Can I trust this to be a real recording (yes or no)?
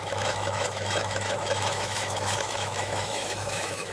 no